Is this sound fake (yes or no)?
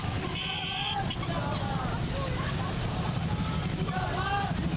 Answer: no